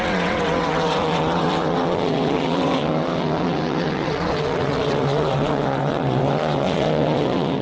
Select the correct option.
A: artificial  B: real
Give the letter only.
A